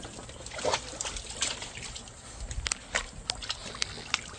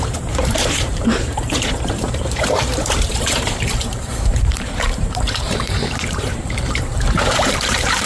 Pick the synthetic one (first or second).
second